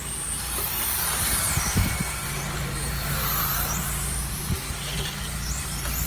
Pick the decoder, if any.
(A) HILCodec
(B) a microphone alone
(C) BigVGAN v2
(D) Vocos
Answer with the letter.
C